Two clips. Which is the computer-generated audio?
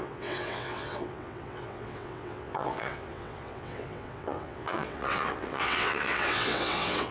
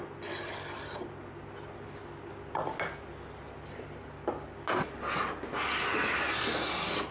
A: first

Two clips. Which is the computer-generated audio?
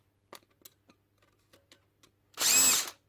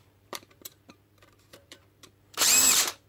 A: second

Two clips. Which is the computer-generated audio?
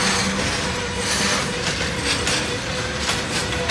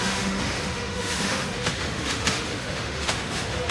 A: second